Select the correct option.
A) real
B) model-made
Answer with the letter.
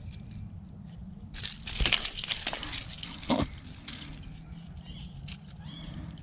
A